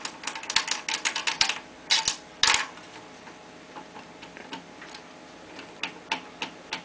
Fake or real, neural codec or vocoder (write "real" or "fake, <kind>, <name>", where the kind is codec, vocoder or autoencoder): real